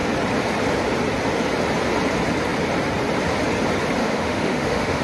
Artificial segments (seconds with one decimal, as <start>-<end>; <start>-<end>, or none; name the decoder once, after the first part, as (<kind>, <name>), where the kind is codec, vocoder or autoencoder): 4.0-5.0 (autoencoder, DAC-VAE)